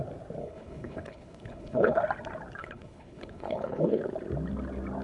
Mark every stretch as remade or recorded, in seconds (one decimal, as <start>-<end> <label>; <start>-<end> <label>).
0.0-0.4 recorded; 0.4-2.0 remade; 2.0-2.6 recorded; 2.6-4.0 remade; 4.0-5.0 recorded